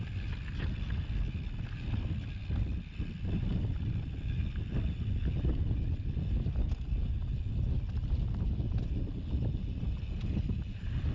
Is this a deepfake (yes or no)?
no